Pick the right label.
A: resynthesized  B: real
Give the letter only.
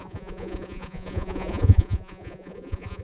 A